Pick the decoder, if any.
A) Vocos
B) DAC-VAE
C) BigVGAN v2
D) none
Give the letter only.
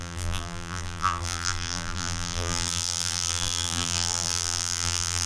C